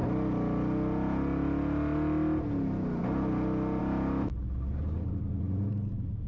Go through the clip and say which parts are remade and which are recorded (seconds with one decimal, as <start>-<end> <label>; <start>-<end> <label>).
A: 0.0-6.3 recorded